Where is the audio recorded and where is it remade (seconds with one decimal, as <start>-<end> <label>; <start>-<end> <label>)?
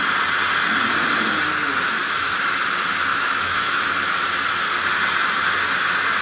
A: 0.0-2.0 recorded; 2.0-2.6 remade; 2.6-3.1 recorded; 3.1-3.8 remade; 3.8-6.2 recorded